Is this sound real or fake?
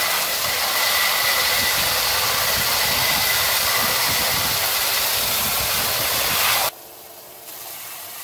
real